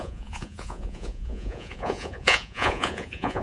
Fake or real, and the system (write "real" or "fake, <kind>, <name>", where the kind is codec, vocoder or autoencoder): fake, vocoder, Vocos